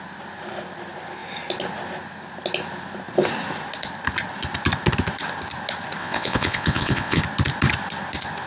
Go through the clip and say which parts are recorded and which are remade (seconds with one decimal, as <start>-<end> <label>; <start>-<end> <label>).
0.0-6.0 recorded; 6.0-7.2 remade; 7.2-8.5 recorded